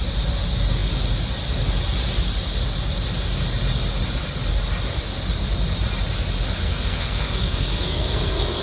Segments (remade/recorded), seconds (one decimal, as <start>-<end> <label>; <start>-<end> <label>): 0.0-6.6 recorded; 6.6-8.6 remade